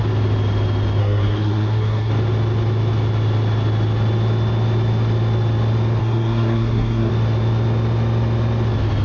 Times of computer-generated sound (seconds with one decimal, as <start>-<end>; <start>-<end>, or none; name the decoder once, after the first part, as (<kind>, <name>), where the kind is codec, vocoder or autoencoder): 1.0-2.1 (codec, SNAC); 6.0-7.1